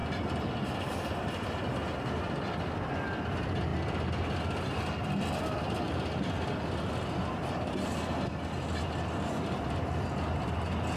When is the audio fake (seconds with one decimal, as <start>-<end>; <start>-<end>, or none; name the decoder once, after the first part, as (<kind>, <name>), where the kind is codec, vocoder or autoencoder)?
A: none